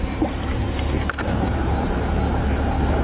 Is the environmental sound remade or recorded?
recorded